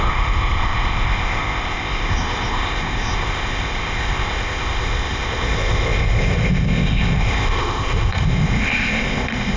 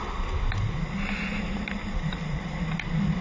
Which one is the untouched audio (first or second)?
second